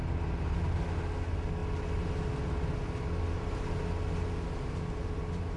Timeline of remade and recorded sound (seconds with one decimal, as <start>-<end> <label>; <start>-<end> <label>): 0.0-5.6 recorded